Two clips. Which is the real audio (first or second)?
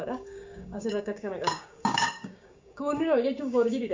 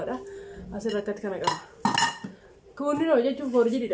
second